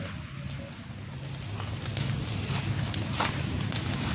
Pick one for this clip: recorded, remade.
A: recorded